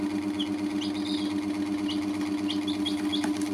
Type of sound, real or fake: fake